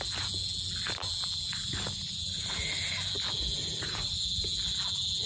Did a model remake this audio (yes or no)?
no